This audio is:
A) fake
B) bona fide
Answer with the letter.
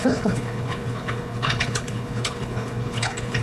A